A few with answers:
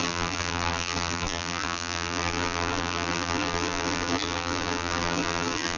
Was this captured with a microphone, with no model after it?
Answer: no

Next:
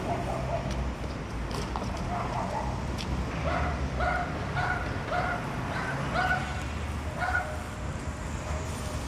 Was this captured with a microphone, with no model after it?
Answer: yes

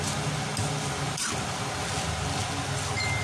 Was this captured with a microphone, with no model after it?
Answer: yes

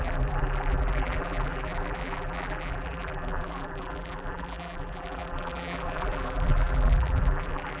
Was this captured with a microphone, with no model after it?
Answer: no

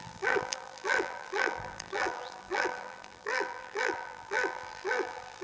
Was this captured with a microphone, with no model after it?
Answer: no